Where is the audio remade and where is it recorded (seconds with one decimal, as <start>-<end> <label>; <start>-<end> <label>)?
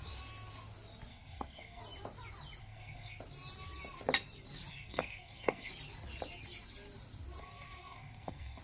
0.0-1.1 recorded; 1.1-1.8 remade; 1.8-2.6 recorded; 2.6-3.2 remade; 3.2-4.7 recorded; 4.7-5.7 remade; 5.7-7.4 recorded; 7.4-8.6 remade